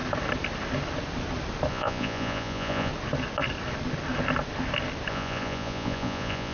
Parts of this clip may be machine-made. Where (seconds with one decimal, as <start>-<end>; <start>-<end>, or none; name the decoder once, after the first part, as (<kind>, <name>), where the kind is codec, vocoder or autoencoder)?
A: 1.7-2.9 (vocoder, Vocos); 5.1-6.5